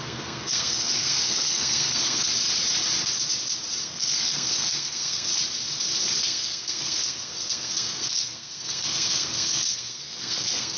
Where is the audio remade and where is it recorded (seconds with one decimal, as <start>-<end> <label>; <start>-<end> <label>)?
0.0-2.3 remade; 2.3-3.8 recorded; 3.8-5.3 remade; 5.3-6.2 recorded; 6.2-10.8 remade